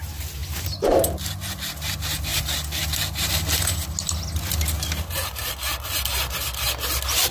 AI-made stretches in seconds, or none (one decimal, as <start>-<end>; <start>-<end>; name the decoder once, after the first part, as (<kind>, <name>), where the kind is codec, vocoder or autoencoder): none